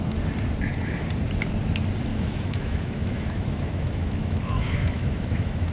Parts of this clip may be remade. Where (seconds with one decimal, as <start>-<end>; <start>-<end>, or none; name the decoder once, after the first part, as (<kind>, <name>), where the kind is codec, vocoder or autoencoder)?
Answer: 2.1-5.7 (autoencoder, DAC-VAE)